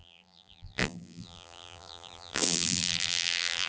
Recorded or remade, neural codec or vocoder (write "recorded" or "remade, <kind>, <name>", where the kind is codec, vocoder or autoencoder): remade, vocoder, BigVGAN v2